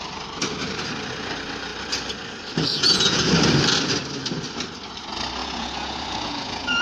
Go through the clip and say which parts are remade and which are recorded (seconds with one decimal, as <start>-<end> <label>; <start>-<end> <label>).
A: 0.0-2.7 recorded; 2.7-3.2 remade; 3.2-5.4 recorded; 5.4-6.8 remade